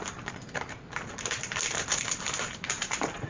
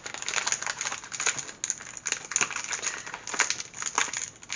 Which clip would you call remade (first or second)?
first